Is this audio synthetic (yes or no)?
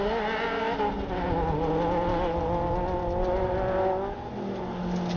no